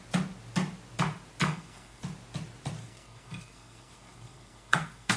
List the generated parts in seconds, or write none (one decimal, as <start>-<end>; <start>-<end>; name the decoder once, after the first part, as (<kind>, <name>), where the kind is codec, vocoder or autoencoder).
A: 1.4-2.0 (codec, SNAC); 2.8-5.2